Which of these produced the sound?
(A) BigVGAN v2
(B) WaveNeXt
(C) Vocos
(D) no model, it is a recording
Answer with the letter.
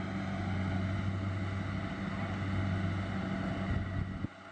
D